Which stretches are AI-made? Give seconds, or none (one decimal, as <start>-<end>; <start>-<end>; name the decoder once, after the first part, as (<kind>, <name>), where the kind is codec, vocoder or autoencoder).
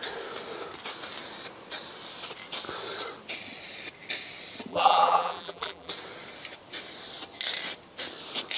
4.7-5.9 (vocoder, BigVGAN v2)